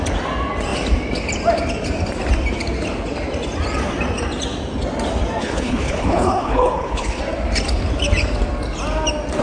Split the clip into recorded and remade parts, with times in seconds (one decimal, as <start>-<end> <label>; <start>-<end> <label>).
0.0-5.4 recorded; 5.4-7.2 remade; 7.2-9.4 recorded

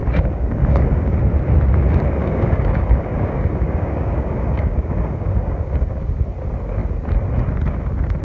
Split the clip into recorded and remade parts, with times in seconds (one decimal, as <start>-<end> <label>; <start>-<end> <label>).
0.0-1.2 remade; 1.2-2.2 recorded; 2.2-6.0 remade; 6.0-8.2 recorded

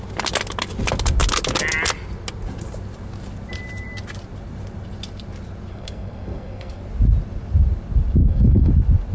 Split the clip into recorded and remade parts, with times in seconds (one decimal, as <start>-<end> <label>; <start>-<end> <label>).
0.0-5.7 recorded; 5.7-6.8 remade; 6.8-8.2 recorded; 8.2-8.7 remade; 8.7-9.1 recorded